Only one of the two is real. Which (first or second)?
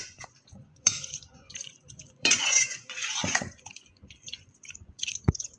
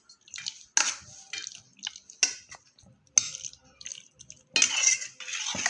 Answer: second